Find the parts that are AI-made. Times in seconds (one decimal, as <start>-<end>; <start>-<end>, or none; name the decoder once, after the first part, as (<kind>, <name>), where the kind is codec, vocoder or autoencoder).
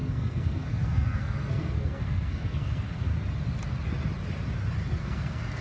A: 0.0-3.1 (codec, SNAC); 5.0-5.6